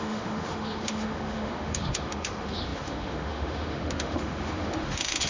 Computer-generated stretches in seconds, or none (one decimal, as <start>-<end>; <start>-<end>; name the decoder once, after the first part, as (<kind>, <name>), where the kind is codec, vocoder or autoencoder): 0.0-5.3 (autoencoder, DAC-VAE)